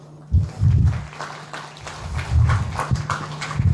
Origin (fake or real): real